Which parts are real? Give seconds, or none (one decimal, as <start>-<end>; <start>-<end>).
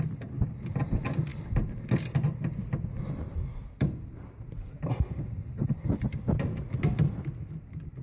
0.0-1.3; 1.8-3.5; 6.1-8.0